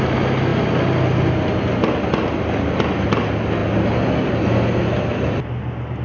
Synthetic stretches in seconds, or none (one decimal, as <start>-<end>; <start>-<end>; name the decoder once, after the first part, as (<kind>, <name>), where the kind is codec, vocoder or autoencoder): none